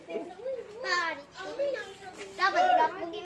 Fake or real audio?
real